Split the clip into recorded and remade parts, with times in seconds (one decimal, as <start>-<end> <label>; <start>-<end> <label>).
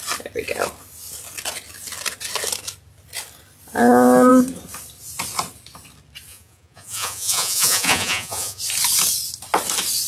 0.0-6.3 recorded; 6.3-8.6 remade; 8.6-10.1 recorded